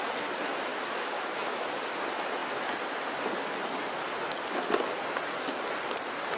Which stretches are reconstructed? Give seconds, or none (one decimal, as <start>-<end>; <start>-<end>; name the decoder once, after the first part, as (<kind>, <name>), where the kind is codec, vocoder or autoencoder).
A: 0.7-1.6 (autoencoder, DAC-VAE)